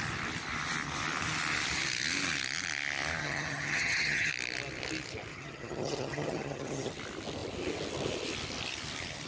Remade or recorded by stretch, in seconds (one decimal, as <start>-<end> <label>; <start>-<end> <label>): 0.0-3.2 recorded; 3.2-4.3 remade; 4.3-5.3 recorded; 5.3-6.9 remade; 6.9-9.3 recorded